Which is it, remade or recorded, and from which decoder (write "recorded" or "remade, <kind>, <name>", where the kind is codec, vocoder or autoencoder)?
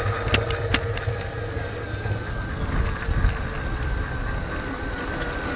recorded